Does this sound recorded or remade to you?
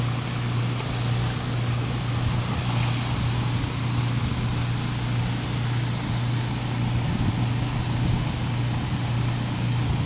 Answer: recorded